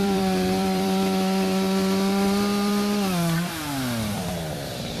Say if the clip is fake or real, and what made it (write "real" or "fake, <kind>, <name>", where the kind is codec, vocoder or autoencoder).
fake, vocoder, BigVGAN v2